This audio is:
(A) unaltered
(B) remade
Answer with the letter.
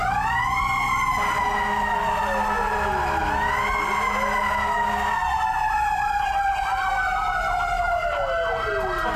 A